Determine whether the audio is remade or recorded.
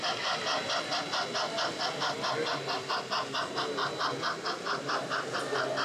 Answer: recorded